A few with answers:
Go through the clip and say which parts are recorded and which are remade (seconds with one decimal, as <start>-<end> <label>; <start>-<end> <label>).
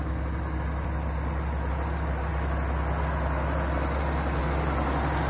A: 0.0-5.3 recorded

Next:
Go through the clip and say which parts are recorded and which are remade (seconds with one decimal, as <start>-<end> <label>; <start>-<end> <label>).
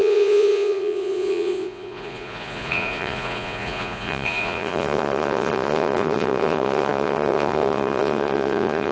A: 0.0-8.9 remade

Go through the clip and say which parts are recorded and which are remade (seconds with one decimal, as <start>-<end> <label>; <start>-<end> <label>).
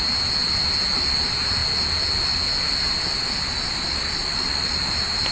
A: 0.0-5.3 recorded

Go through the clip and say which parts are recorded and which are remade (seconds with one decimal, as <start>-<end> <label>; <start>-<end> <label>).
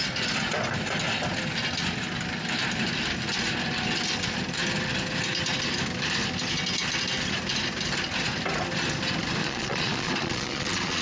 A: 0.0-9.4 recorded; 9.4-11.0 remade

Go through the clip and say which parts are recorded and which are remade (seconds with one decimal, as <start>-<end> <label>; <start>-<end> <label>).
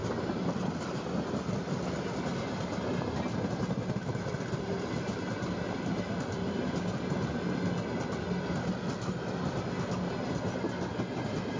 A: 0.0-1.0 remade; 1.0-11.6 recorded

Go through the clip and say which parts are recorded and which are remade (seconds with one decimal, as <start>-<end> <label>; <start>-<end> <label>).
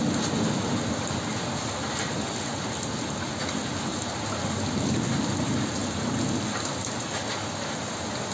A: 0.0-8.3 recorded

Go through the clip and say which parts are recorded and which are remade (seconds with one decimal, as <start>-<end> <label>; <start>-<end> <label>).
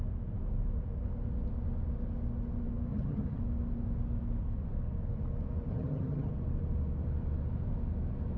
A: 0.0-2.9 recorded; 2.9-3.4 remade; 3.4-5.7 recorded; 5.7-6.3 remade; 6.3-8.4 recorded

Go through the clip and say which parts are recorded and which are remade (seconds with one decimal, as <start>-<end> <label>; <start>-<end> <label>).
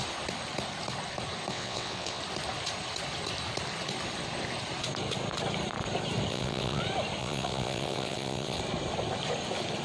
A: 0.0-1.5 recorded; 1.5-2.2 remade; 2.2-6.3 recorded; 6.3-6.8 remade; 6.8-7.2 recorded; 7.2-8.6 remade; 8.6-9.8 recorded